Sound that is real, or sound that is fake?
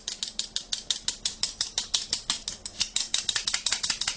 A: real